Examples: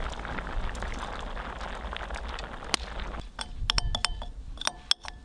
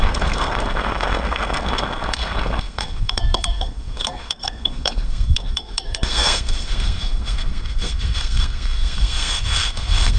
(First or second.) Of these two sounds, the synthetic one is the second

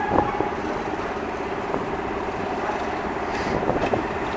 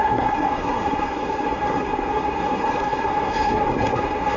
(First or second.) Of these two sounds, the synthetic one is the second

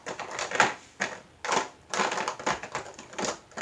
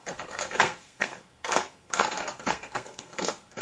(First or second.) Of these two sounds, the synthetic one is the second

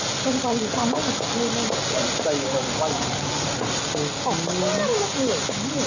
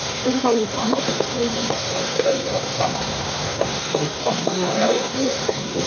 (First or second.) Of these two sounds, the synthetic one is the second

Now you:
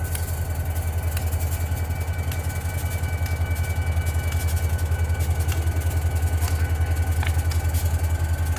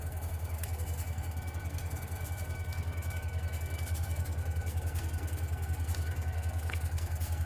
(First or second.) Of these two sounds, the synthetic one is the second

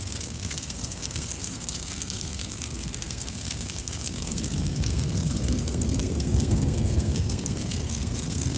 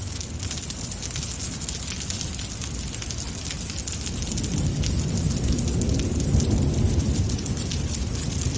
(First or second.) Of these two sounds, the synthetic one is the first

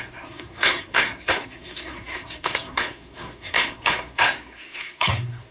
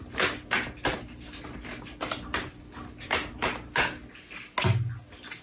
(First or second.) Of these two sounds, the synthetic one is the first